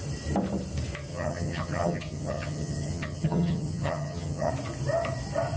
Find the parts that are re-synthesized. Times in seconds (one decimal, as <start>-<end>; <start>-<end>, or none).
1.1-4.5